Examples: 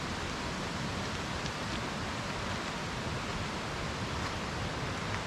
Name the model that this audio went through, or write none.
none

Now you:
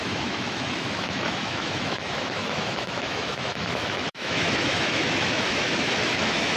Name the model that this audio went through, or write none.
autoencoder, DAC-VAE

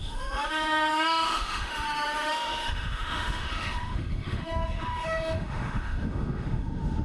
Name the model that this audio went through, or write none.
autoencoder, DAC-VAE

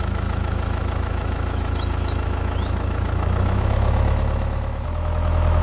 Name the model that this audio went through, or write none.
autoencoder, DAC-VAE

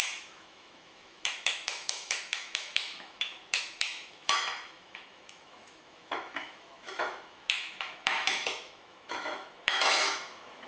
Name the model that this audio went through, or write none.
autoencoder, DAC-VAE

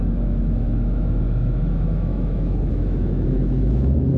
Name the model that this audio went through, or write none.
autoencoder, DAC-VAE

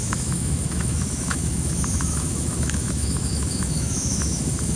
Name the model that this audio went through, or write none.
autoencoder, DAC-VAE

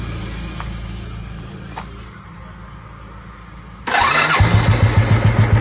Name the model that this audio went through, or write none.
none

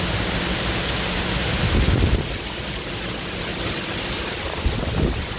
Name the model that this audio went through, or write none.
none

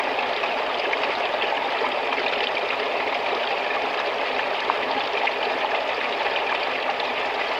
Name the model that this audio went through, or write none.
none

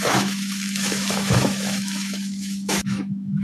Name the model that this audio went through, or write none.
autoencoder, DAC-VAE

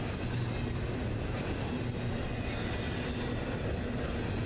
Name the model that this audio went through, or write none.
none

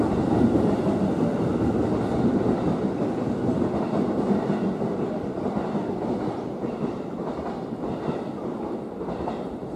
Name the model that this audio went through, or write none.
none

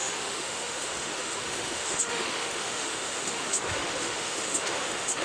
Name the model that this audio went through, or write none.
autoencoder, DAC-VAE